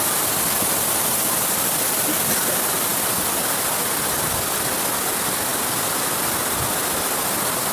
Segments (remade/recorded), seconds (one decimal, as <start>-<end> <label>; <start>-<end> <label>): 0.0-7.7 recorded